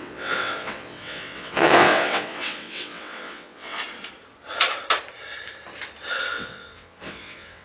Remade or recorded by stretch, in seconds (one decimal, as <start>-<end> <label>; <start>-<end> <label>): 0.0-3.8 remade; 3.8-6.3 recorded; 6.3-7.6 remade

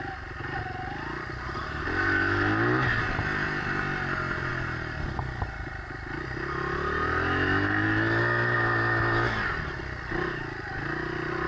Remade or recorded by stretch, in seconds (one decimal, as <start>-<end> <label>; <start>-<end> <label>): 0.0-11.5 recorded

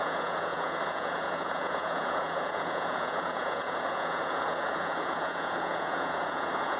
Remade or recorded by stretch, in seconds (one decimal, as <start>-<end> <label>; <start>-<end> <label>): 0.0-6.8 remade

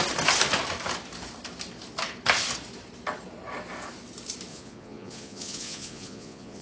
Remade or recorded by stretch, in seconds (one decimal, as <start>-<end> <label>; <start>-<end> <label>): 0.0-4.5 recorded; 4.5-6.6 remade

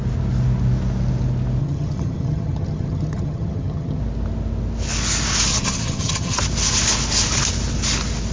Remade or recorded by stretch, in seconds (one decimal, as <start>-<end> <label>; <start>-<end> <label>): 0.0-1.6 recorded; 1.6-4.0 remade; 4.0-5.5 recorded; 5.5-6.4 remade; 6.4-8.3 recorded